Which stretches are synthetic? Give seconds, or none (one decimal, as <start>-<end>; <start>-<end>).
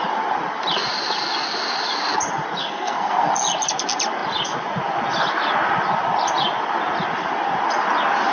2.6-3.3